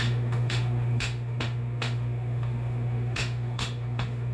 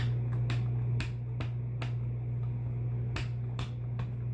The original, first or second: second